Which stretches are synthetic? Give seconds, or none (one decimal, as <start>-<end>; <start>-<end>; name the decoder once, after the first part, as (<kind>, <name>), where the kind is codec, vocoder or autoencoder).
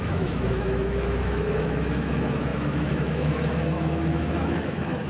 0.0-5.1 (autoencoder, DAC-VAE)